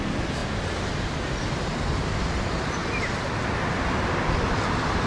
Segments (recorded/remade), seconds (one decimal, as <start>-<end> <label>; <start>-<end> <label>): 0.0-5.1 recorded